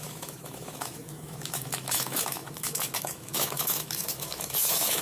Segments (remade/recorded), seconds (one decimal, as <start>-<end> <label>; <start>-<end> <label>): 0.0-5.0 remade